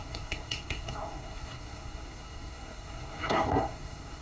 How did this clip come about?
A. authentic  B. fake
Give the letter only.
B